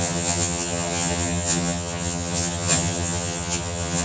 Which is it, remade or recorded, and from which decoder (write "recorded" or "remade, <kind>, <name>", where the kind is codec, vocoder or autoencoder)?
remade, vocoder, HiFi-GAN